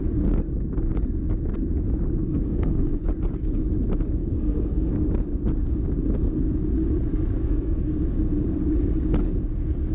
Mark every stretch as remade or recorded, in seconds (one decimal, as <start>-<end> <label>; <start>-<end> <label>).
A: 0.0-2.2 recorded; 2.2-3.1 remade; 3.1-4.2 recorded; 4.2-4.9 remade; 4.9-7.4 recorded; 7.4-7.9 remade; 7.9-9.9 recorded